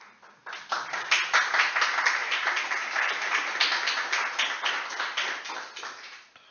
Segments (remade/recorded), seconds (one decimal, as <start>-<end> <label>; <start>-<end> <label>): 0.0-6.5 recorded